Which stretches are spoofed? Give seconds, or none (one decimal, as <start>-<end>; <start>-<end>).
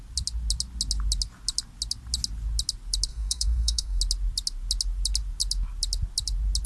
3.1-4.0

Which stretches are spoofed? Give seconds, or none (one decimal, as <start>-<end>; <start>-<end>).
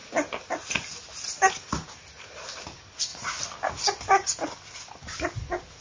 none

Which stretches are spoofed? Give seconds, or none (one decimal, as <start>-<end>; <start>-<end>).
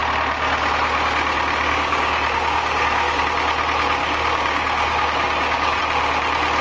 1.5-3.2; 4.0-5.8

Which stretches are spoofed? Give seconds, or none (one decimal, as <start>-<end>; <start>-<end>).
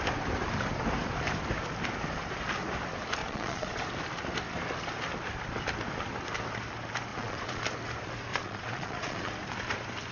3.2-3.8; 7.1-7.6; 8.3-9.3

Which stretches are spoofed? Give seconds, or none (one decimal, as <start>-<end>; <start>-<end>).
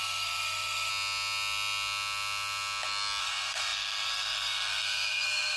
0.0-0.9; 3.2-5.6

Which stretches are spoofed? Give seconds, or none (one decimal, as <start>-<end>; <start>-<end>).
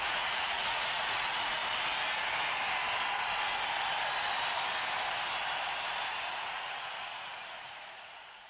0.0-1.6; 6.2-8.5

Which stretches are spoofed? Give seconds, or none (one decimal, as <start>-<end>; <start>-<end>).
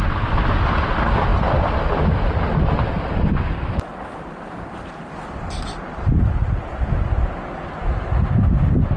3.9-6.9